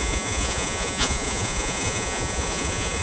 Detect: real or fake fake